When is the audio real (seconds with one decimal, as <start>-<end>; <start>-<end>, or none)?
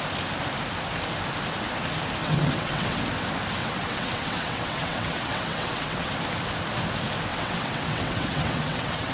0.0-2.2; 3.0-3.6; 6.1-7.3